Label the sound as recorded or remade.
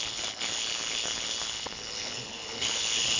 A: remade